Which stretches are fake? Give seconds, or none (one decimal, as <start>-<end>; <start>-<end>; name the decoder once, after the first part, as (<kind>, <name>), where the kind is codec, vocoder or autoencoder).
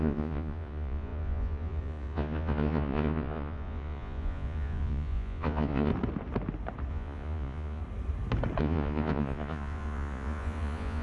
0.0-5.9 (vocoder, Vocos); 6.9-7.8; 8.6-11.0